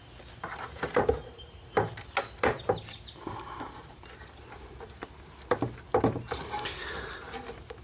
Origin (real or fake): real